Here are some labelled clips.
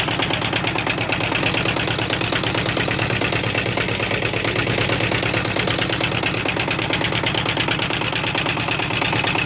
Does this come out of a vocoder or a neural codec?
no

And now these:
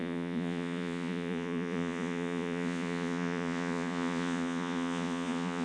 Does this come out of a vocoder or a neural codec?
yes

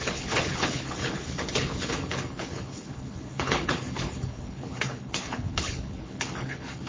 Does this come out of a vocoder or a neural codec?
yes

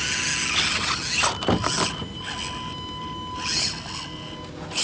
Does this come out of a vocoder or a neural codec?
no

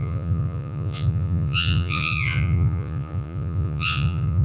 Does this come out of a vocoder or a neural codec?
yes